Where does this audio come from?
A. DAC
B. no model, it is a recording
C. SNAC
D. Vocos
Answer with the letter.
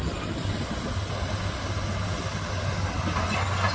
B